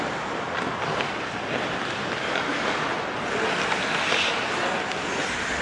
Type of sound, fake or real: real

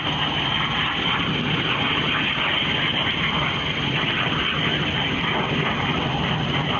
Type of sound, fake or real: real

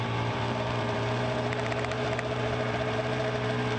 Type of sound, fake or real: fake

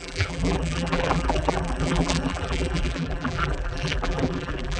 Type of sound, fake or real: fake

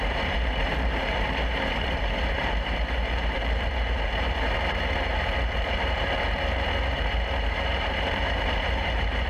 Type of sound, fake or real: fake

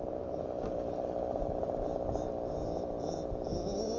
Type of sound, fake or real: real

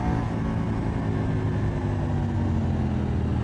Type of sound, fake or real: real